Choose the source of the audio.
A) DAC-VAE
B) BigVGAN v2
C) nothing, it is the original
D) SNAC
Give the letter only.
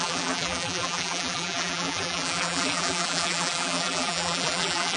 B